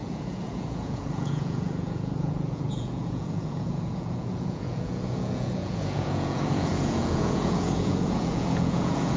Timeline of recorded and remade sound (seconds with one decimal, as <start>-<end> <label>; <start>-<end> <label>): 0.0-9.2 remade